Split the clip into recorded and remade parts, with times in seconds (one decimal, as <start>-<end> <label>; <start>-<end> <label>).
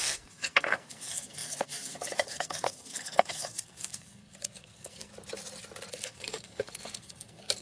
0.0-5.1 remade; 5.1-5.9 recorded; 5.9-7.6 remade